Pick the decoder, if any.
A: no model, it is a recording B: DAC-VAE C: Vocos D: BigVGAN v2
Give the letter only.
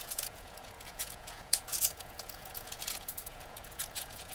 C